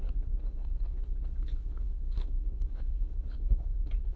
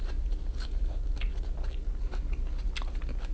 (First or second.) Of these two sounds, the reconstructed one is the first